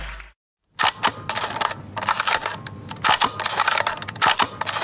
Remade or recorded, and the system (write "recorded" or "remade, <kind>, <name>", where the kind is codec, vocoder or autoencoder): recorded